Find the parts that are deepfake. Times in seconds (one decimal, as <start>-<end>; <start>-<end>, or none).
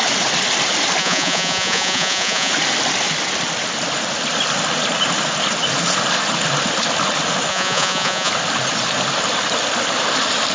1.0-2.5; 7.5-8.3